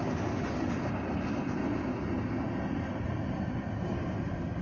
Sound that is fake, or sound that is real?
real